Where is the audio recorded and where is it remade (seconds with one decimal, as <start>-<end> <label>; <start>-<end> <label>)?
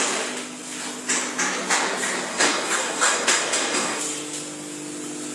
0.0-2.3 recorded; 2.3-4.0 remade; 4.0-5.3 recorded